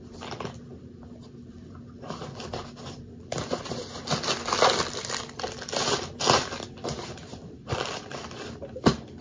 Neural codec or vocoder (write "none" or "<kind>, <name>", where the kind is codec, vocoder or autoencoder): none